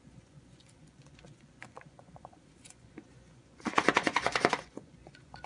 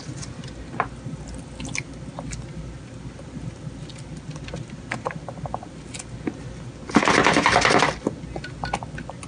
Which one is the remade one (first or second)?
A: first